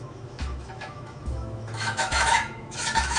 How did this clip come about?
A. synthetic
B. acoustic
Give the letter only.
A